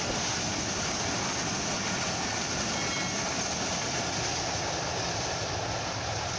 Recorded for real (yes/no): yes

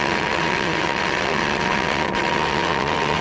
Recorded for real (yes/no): no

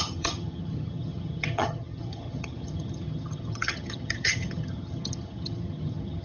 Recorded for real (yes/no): no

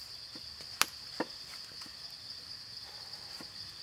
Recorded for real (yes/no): yes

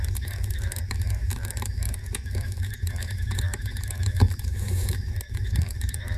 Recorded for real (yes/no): no